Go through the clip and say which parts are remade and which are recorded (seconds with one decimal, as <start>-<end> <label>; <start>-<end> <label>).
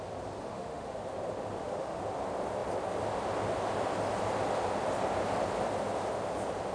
0.0-0.4 recorded; 0.4-1.0 remade; 1.0-1.5 recorded; 1.5-2.0 remade; 2.0-6.7 recorded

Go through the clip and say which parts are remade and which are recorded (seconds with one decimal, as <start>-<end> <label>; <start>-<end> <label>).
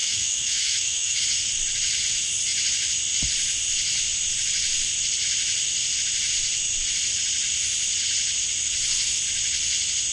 0.0-1.2 remade; 1.2-10.1 recorded